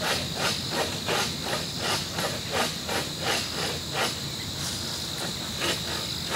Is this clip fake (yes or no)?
no